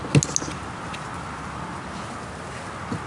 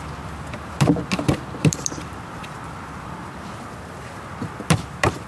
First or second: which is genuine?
first